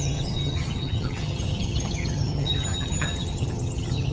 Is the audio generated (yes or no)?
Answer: yes